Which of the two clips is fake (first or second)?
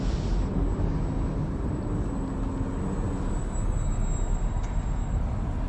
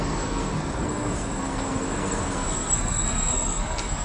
second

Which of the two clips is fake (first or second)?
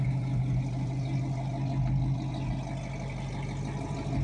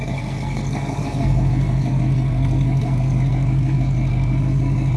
second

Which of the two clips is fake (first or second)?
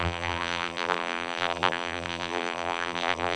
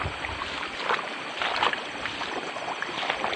first